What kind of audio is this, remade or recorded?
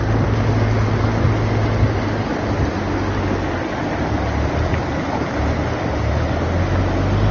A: recorded